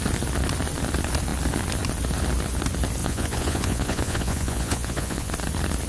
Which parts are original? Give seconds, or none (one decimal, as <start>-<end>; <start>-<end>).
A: 0.0-3.0; 5.3-5.9